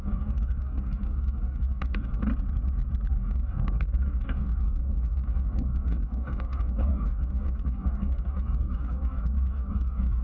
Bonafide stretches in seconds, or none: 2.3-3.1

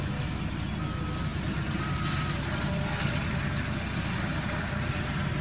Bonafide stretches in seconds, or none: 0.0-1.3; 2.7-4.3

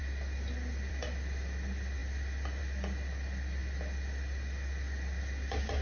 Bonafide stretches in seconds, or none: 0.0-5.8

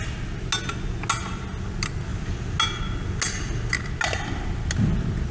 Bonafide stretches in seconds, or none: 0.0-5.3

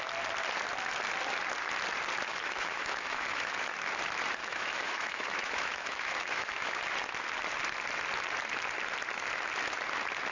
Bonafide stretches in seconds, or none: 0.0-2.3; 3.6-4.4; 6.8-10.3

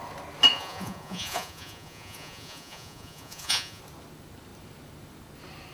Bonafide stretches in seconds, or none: 0.0-0.5; 3.8-5.7

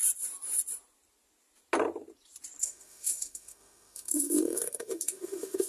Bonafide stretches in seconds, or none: 0.0-2.6